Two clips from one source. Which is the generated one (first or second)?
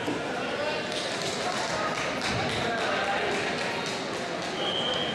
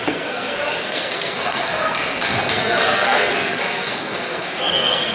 second